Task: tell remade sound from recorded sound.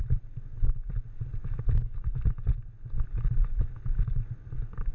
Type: recorded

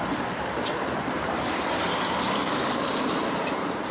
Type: remade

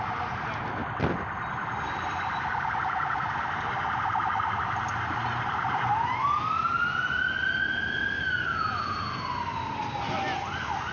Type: recorded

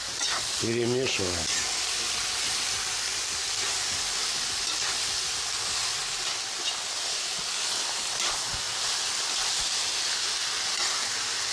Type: recorded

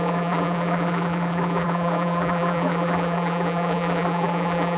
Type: remade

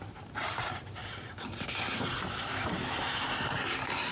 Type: remade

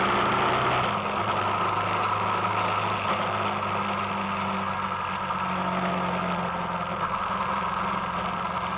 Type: recorded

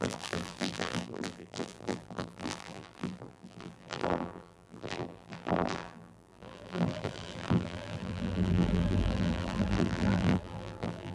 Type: remade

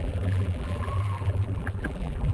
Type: remade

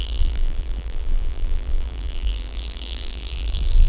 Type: remade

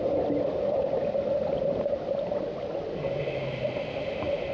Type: recorded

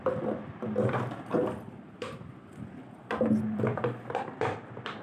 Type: remade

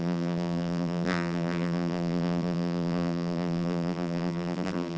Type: remade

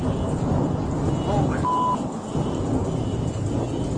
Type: recorded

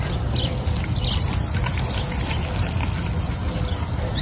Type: recorded